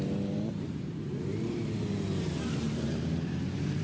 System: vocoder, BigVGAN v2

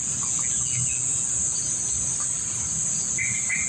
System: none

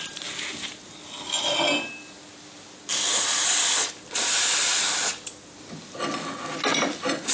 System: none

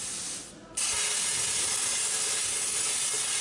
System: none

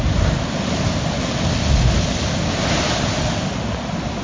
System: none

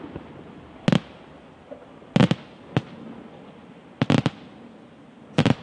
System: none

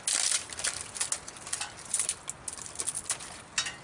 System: none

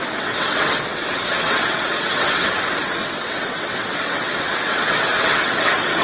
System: vocoder, WaveNeXt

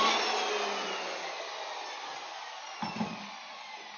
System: none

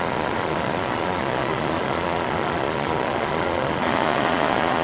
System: vocoder, Vocos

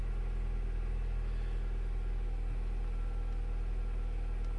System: none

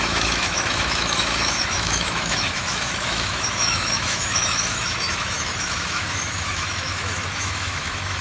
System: autoencoder, DAC-VAE